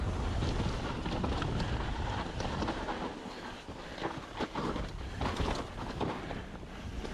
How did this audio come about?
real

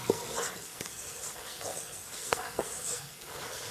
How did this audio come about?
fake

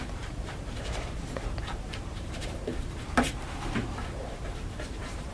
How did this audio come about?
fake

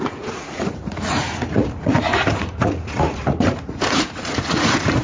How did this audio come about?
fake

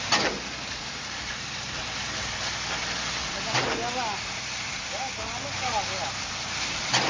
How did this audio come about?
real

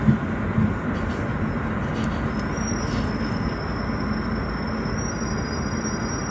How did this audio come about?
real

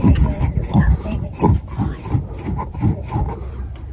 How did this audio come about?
fake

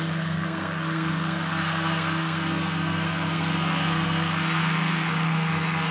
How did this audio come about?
fake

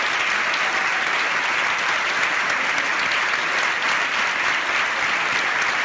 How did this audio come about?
real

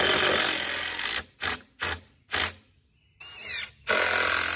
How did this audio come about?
real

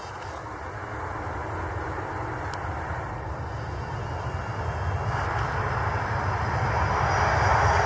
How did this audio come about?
real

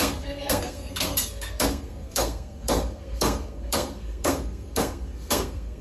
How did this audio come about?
fake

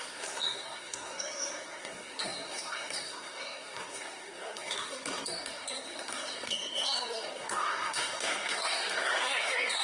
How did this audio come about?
fake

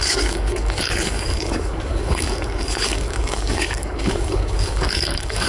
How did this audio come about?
fake